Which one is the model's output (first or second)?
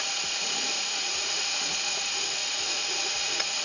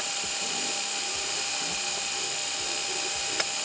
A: first